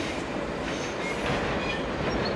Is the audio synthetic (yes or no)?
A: no